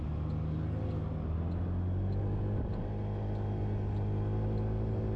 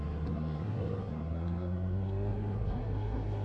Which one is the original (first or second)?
first